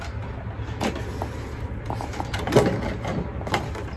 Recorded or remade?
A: recorded